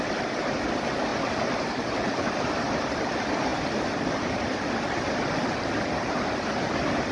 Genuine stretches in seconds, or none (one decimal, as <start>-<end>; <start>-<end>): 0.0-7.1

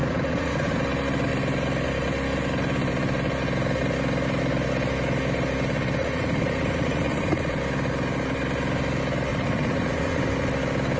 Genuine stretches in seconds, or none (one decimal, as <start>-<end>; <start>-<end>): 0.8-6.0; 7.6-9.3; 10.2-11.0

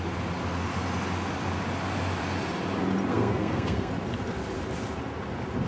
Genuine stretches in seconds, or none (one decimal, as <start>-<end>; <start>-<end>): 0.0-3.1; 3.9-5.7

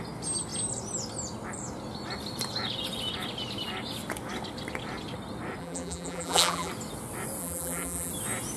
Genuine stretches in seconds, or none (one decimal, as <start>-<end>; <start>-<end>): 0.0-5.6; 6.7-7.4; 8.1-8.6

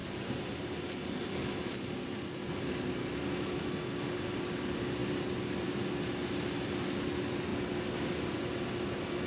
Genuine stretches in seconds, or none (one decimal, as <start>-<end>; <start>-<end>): 0.0-9.3